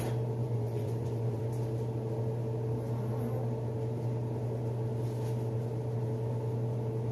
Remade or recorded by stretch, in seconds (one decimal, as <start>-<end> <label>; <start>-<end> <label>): 0.0-0.4 recorded; 0.4-1.4 remade; 1.4-7.1 recorded